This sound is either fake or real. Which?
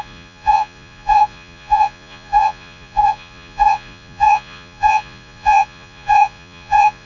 fake